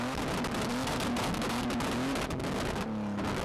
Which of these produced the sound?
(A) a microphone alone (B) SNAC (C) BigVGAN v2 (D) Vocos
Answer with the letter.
A